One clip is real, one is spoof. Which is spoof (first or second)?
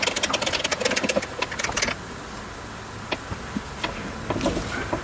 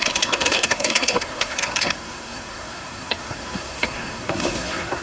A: second